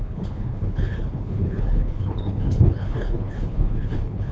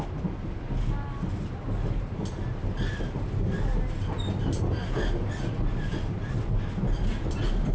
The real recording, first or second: second